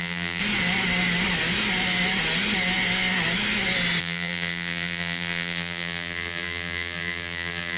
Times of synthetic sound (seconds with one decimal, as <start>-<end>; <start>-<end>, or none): 0.0-0.4; 4.0-7.8